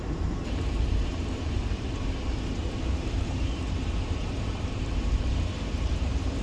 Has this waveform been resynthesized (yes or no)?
yes